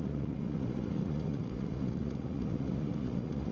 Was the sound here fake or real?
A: fake